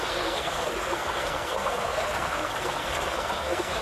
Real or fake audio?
fake